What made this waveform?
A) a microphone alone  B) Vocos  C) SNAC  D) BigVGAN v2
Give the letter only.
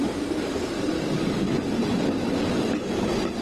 A